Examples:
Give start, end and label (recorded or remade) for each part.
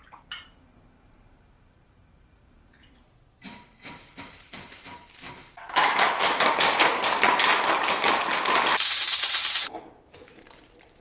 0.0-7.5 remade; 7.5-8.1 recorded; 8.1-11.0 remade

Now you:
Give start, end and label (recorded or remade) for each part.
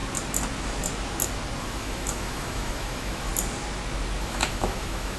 0.0-1.6 recorded; 1.6-3.3 remade; 3.3-4.2 recorded; 4.2-5.2 remade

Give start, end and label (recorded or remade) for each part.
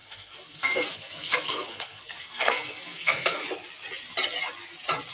0.0-3.4 remade; 3.4-5.1 recorded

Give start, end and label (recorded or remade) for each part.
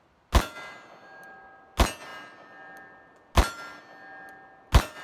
0.0-5.0 recorded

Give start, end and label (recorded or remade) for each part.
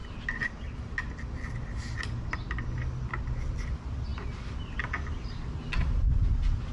0.0-6.7 recorded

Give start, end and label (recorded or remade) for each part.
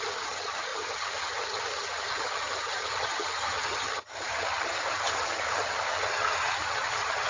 0.0-7.3 remade